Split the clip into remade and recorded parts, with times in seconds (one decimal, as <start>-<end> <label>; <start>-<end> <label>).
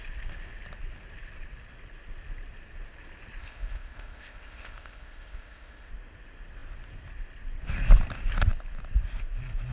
0.0-3.4 recorded; 3.4-5.9 remade; 5.9-9.7 recorded